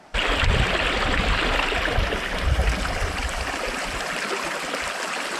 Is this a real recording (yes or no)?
yes